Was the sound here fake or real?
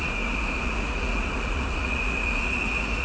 fake